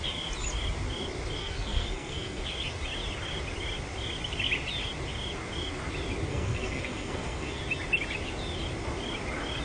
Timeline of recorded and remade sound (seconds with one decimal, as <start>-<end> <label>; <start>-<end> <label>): 0.0-1.4 recorded; 1.4-2.4 remade; 2.4-6.3 recorded; 6.3-7.6 remade; 7.6-9.6 recorded